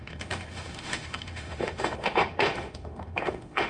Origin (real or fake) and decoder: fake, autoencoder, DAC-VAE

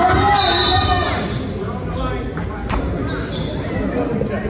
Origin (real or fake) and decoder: real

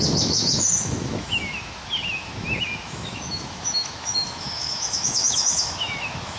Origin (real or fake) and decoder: fake, autoencoder, DAC-VAE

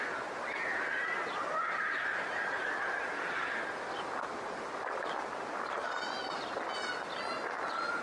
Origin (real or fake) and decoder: real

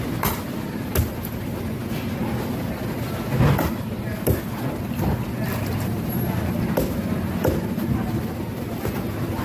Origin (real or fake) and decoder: real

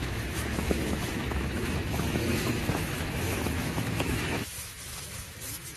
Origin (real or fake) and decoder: fake, autoencoder, DAC-VAE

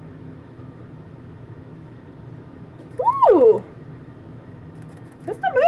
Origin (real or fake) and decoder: fake, autoencoder, DAC-VAE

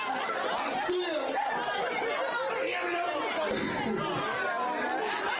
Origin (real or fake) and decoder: real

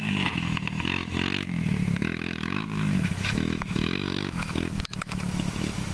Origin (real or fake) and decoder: fake, autoencoder, DAC-VAE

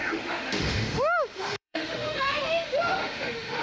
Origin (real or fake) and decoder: fake, autoencoder, DAC-VAE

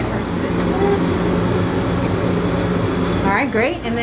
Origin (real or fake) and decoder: real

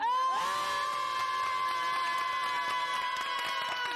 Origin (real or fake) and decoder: real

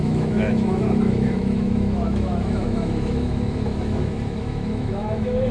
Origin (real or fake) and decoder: fake, autoencoder, DAC-VAE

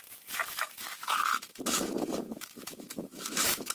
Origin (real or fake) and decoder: fake, autoencoder, DAC-VAE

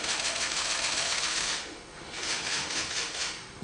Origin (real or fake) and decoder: fake, autoencoder, DAC-VAE